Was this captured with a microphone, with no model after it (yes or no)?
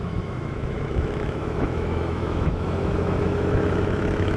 no